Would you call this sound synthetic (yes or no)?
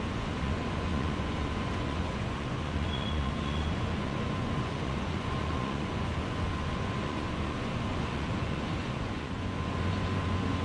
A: yes